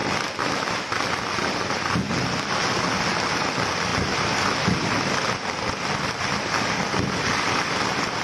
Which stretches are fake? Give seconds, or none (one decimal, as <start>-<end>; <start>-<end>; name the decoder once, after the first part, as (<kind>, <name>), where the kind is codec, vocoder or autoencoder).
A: none